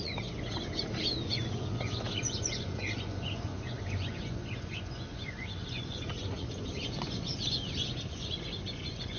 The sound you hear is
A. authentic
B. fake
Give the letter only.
B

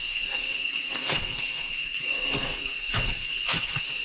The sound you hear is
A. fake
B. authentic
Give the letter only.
A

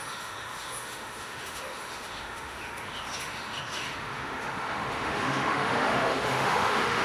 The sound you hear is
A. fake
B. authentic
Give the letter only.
A